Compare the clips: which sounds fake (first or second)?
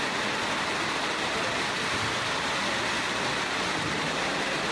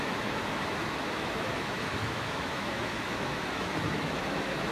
second